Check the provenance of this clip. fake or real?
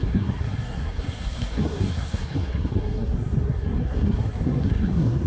fake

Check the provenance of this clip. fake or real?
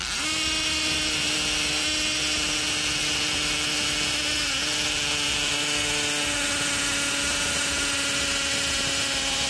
real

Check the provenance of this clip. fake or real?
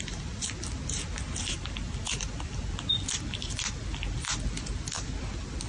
real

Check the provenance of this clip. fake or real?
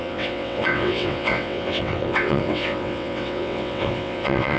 fake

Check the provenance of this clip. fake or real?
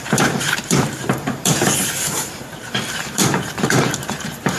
fake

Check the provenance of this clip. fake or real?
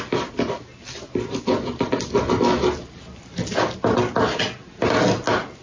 real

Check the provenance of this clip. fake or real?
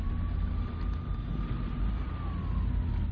real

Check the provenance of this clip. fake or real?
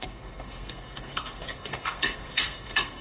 fake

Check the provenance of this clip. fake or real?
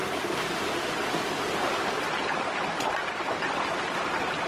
real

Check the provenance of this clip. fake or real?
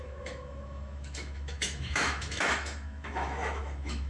fake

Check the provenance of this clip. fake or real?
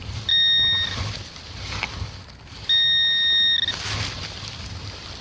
real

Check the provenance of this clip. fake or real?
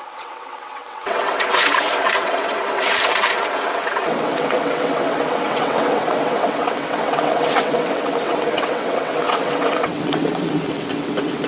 fake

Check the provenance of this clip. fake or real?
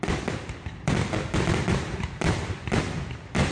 fake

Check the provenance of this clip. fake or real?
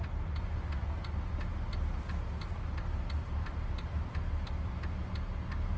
real